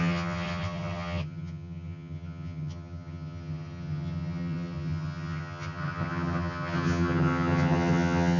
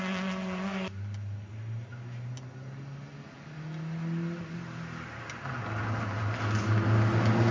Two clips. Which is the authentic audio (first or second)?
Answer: second